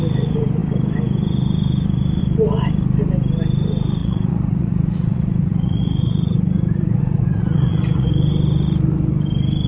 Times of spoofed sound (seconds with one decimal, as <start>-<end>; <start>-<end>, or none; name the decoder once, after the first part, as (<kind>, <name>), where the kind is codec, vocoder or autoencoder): 4.0-8.1 (vocoder, Vocos)